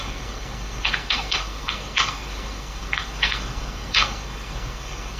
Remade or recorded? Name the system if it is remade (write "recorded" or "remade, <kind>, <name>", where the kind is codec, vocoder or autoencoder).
remade, codec, SNAC